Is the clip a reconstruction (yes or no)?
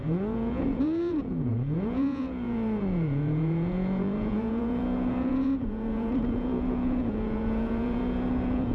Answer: yes